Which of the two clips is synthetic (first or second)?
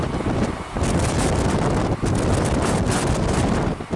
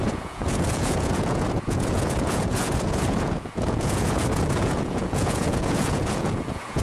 second